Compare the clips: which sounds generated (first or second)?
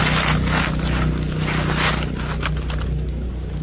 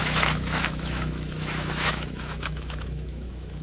second